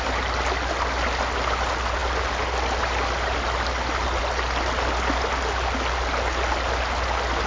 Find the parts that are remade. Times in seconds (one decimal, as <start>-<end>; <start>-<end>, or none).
none